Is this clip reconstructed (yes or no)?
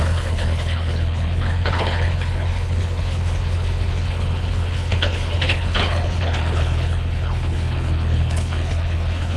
yes